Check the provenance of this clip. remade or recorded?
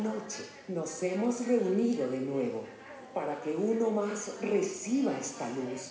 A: recorded